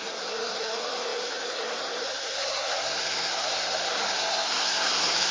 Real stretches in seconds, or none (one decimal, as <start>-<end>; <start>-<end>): none